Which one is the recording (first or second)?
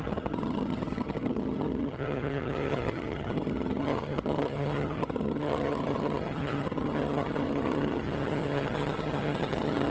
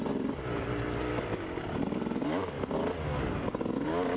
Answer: second